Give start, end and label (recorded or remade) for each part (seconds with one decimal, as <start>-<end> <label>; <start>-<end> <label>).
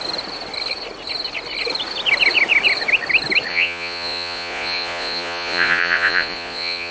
0.0-3.5 recorded; 3.5-6.9 remade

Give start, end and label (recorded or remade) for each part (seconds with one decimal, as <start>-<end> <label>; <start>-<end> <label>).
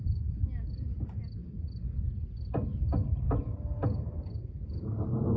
0.0-5.4 recorded